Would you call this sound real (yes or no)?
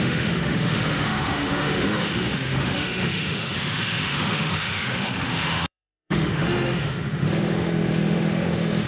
no